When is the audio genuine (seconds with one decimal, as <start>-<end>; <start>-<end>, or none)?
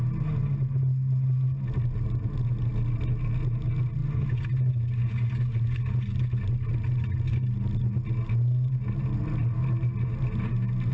0.0-10.9